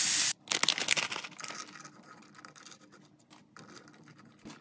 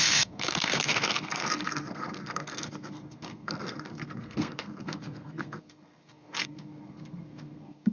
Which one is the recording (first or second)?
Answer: first